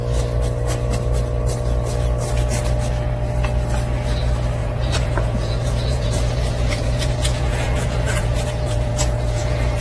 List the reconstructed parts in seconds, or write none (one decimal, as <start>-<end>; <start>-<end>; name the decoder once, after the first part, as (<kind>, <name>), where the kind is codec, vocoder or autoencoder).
4.6-9.8 (vocoder, Vocos)